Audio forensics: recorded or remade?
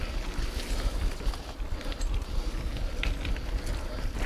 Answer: recorded